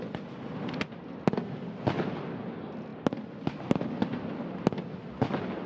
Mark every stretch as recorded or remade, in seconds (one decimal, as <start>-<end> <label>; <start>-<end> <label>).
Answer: 0.0-5.7 recorded